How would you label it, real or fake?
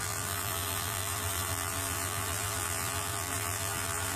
fake